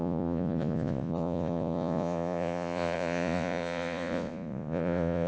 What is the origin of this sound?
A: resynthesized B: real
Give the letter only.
A